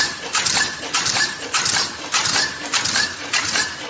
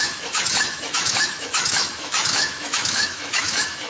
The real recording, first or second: first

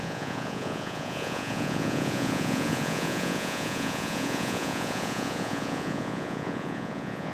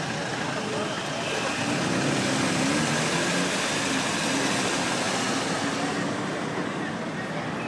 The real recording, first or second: second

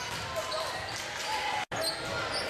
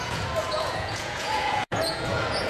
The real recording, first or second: first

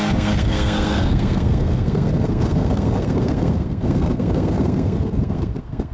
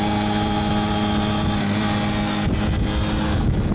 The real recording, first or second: second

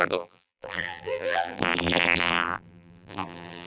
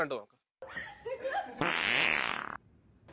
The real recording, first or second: second